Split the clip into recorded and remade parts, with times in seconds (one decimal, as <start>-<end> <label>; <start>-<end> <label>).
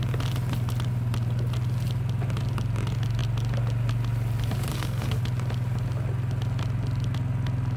0.0-4.7 recorded; 4.7-5.2 remade; 5.2-7.8 recorded